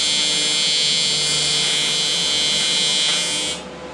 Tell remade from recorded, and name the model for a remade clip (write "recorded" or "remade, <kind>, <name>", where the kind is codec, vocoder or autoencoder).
recorded